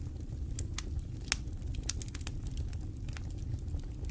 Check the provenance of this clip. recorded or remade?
recorded